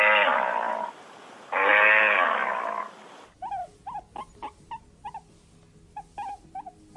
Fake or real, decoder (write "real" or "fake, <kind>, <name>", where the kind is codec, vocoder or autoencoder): real